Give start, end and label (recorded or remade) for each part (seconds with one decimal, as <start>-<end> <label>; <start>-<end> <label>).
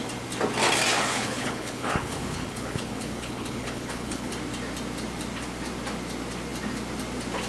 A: 0.0-1.1 recorded; 1.1-4.3 remade; 4.3-7.5 recorded